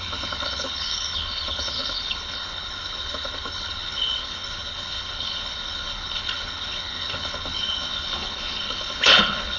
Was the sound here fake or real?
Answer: fake